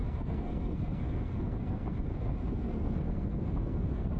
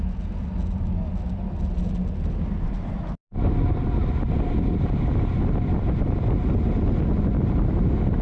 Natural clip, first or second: second